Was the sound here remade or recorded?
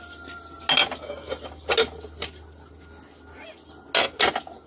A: recorded